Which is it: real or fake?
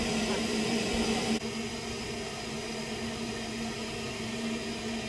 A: real